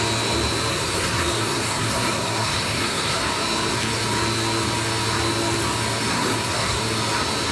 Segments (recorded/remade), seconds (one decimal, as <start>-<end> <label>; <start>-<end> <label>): 0.0-0.7 recorded; 0.7-3.2 remade; 3.2-6.1 recorded; 6.1-6.8 remade; 6.8-7.5 recorded